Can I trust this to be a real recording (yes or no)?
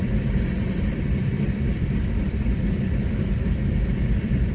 no